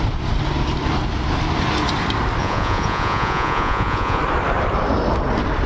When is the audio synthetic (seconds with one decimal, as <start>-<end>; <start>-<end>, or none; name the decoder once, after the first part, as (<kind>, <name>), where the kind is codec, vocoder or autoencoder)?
2.4-4.2 (vocoder, Vocos)